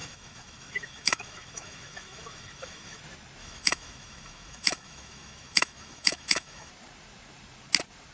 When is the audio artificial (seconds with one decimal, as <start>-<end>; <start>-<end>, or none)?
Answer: 0.0-3.0; 3.4-6.7